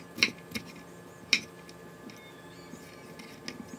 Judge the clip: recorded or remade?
recorded